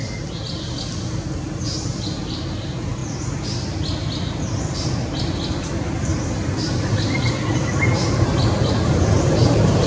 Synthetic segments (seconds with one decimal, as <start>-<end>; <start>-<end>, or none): 0.0-3.0; 4.3-6.1; 7.5-9.9